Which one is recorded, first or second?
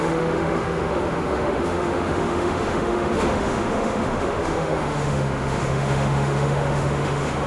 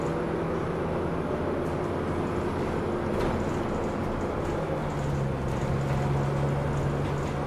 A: second